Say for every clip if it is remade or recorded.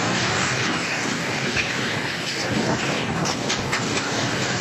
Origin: remade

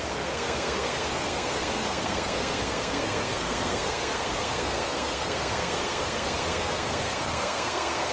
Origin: remade